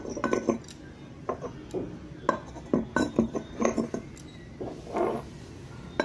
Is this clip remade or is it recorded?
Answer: recorded